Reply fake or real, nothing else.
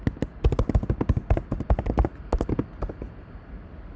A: real